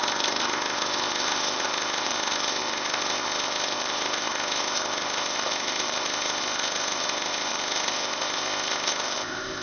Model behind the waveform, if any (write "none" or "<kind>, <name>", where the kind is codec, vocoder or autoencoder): codec, ZipCodec